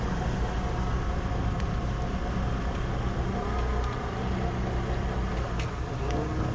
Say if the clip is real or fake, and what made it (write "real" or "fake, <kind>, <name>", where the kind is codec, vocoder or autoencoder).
real